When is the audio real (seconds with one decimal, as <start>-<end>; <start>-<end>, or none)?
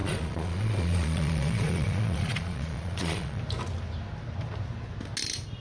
3.4-5.6